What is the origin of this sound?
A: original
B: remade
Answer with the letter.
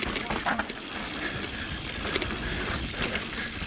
A